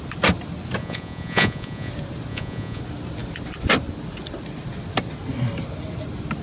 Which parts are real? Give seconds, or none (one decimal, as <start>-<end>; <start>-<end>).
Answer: 0.0-0.8; 1.9-2.3; 2.8-6.4